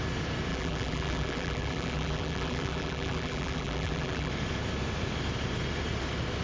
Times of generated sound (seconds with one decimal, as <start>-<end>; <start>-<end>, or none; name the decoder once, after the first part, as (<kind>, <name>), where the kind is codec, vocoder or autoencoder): 0.5-4.3 (vocoder, BigVGAN v2)